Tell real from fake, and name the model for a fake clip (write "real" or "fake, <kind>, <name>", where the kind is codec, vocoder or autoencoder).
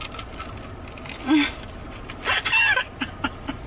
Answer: real